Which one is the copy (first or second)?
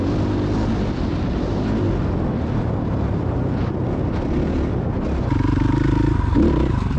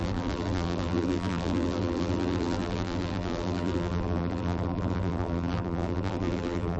second